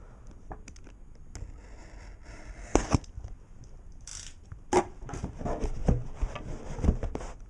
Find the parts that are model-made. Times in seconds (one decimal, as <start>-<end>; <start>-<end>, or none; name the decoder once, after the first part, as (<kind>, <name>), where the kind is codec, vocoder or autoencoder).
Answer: none